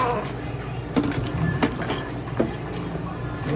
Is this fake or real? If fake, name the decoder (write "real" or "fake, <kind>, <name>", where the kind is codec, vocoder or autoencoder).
real